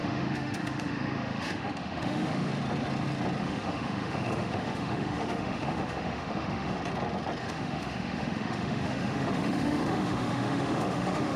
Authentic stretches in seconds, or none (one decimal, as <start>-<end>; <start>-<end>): 2.5-3.4; 6.8-7.4